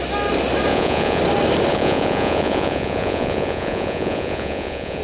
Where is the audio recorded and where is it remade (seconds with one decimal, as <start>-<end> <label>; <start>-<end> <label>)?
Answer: 0.0-0.7 recorded; 0.7-1.2 remade; 1.2-1.7 recorded; 1.7-5.0 remade